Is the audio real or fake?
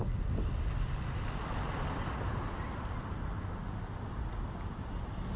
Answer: real